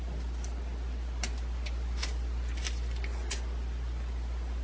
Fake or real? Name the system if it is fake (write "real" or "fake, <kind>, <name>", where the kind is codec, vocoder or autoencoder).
real